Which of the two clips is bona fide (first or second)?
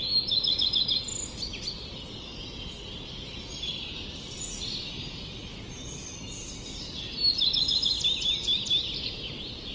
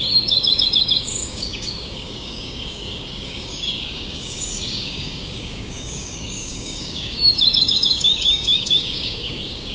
first